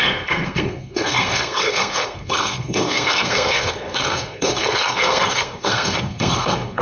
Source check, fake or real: fake